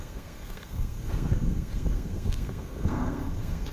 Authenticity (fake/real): fake